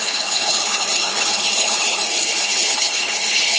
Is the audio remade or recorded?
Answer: remade